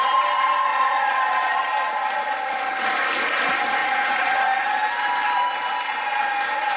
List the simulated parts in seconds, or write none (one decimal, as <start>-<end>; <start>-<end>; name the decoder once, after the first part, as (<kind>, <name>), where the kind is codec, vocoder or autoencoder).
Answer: 0.7-1.2 (vocoder, Vocos); 3.8-4.3